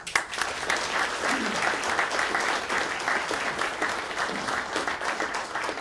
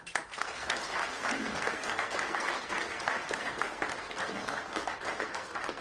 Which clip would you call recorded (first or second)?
first